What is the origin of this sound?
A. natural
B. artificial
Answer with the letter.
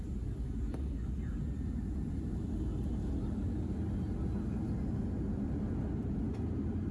A